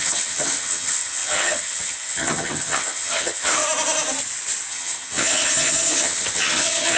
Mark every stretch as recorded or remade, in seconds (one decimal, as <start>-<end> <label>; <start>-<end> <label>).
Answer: 0.0-3.6 remade; 3.6-4.7 recorded; 4.7-7.0 remade